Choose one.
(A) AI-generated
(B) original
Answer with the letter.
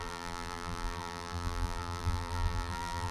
A